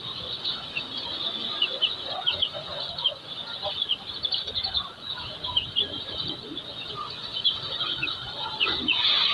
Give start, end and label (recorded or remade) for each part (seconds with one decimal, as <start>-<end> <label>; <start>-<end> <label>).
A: 0.0-3.9 remade; 3.9-4.4 recorded; 4.4-9.3 remade